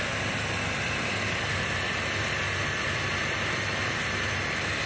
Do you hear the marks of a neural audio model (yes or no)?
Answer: no